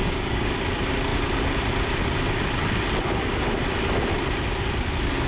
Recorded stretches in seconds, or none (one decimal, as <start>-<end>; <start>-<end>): 0.5-5.3